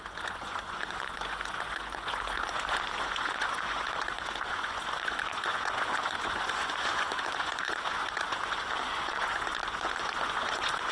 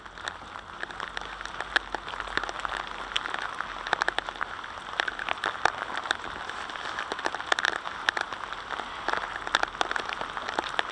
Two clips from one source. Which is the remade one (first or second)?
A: first